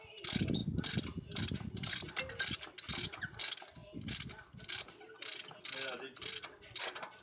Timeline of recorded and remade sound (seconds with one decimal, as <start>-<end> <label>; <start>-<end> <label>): 0.0-7.2 recorded